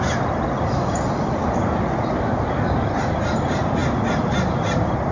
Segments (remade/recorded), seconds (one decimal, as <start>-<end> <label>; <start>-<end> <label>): 0.0-5.1 recorded